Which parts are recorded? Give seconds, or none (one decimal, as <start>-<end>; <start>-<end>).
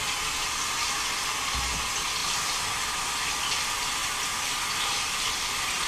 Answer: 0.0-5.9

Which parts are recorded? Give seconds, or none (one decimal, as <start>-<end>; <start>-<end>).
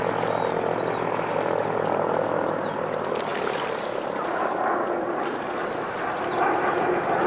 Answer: 0.0-7.3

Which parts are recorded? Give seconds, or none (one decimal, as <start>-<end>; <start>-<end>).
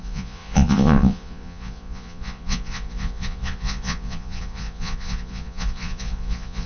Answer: none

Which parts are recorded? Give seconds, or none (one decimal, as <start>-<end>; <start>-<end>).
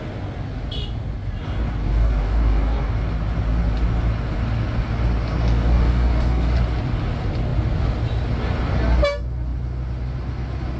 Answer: 0.0-1.8; 2.9-5.4; 6.6-10.8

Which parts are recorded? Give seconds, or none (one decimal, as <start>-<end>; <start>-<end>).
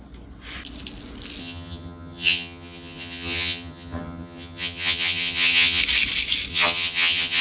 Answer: 0.0-1.4; 5.8-6.5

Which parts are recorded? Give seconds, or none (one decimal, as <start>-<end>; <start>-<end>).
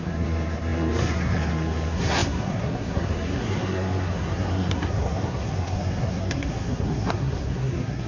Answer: none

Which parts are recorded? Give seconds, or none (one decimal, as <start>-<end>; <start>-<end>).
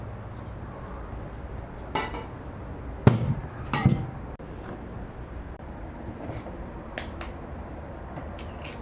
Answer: 0.0-8.8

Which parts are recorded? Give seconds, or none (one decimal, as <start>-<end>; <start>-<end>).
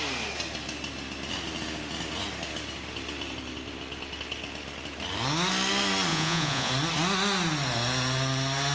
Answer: 0.0-6.1; 6.7-8.7